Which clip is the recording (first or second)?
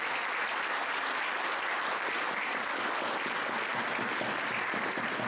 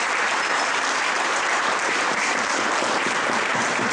first